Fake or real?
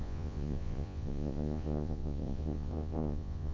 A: fake